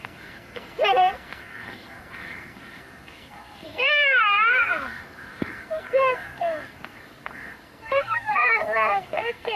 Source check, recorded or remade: remade